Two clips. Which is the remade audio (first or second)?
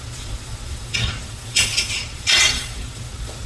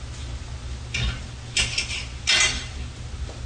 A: first